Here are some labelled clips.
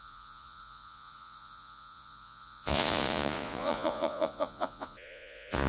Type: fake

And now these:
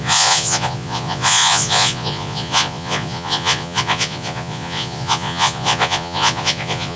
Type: fake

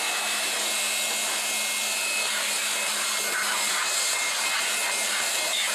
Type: real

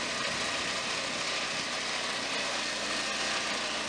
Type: real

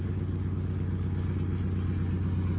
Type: real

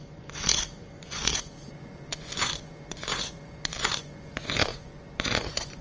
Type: fake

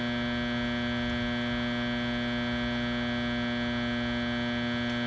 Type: real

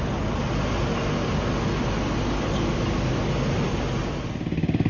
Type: real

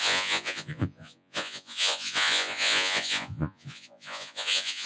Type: fake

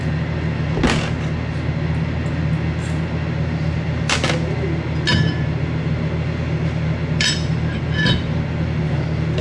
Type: real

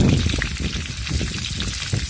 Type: real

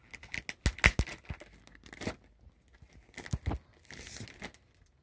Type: real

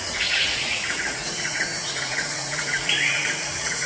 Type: fake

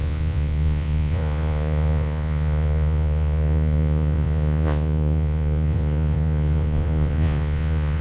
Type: fake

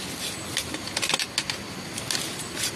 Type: real